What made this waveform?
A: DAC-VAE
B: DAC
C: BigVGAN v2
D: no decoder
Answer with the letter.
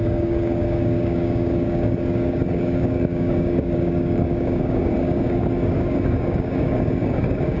B